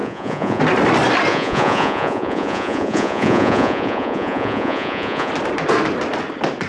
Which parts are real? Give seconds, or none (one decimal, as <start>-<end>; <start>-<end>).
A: 0.6-1.3; 5.3-6.7